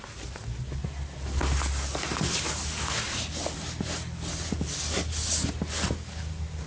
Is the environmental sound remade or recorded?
recorded